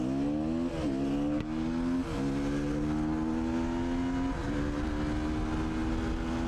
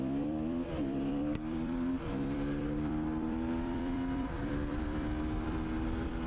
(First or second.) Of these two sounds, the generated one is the second